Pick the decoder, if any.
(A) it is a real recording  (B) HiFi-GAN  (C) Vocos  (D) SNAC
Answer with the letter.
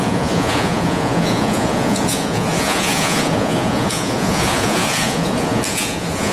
C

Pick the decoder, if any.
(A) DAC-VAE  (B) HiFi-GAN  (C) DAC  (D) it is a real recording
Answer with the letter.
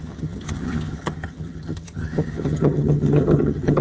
B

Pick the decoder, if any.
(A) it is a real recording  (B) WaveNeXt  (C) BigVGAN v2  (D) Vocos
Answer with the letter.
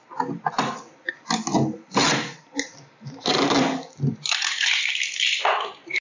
A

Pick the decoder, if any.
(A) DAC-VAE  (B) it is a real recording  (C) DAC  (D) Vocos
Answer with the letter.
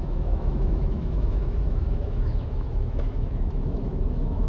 A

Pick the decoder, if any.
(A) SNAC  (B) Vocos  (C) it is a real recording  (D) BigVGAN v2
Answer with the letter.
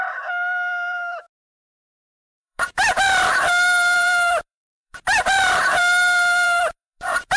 D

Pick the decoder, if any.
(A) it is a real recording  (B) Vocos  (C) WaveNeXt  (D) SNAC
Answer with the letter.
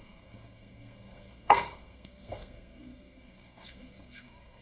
D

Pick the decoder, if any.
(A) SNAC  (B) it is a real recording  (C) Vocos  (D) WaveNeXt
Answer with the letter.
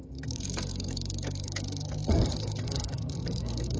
A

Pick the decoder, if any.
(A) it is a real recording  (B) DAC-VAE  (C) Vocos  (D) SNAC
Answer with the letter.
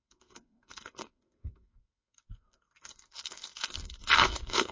D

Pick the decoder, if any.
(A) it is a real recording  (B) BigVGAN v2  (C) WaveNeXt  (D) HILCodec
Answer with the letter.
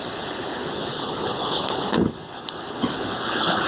D